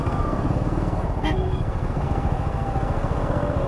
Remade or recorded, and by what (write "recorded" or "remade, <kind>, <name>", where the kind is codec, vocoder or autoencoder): remade, codec, SNAC